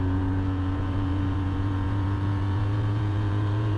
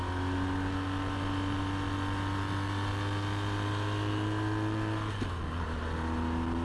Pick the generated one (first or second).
first